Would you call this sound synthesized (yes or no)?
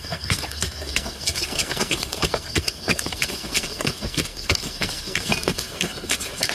yes